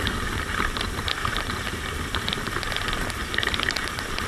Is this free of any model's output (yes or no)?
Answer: yes